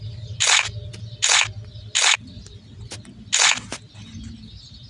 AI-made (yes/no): no